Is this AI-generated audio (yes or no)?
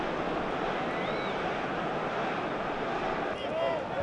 no